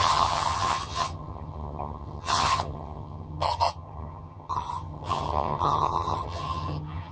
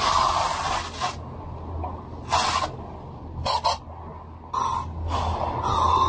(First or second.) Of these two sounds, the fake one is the first